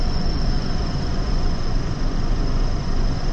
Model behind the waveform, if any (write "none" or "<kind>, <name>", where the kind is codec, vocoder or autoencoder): vocoder, Vocos